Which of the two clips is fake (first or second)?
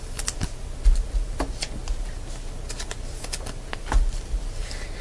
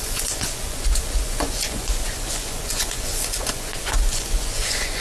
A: second